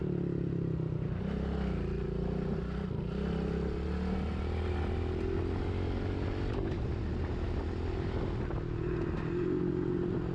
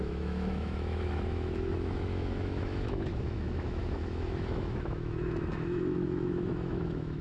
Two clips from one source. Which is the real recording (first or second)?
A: first